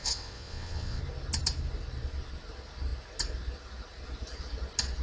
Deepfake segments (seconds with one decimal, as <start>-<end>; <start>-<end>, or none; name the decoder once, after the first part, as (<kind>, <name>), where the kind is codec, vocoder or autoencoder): 0.0-1.0 (vocoder, WaveNeXt)